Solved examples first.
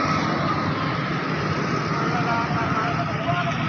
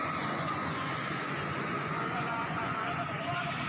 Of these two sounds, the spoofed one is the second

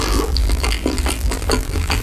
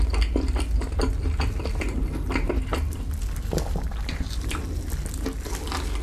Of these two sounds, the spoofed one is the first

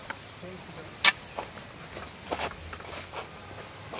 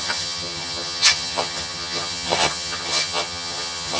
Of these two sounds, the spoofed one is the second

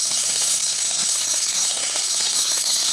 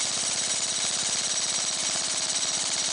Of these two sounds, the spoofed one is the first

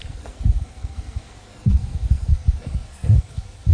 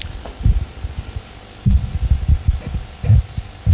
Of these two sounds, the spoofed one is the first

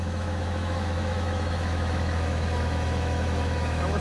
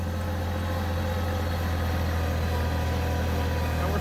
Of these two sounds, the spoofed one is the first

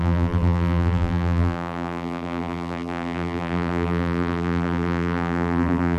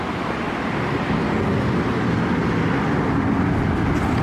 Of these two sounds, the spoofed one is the first